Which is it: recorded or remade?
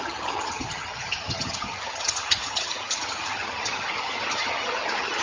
remade